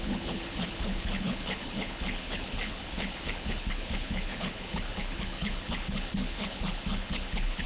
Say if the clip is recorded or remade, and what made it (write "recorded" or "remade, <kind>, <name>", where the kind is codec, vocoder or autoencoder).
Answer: remade, codec, HILCodec